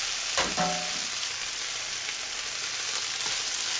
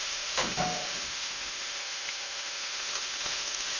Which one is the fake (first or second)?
second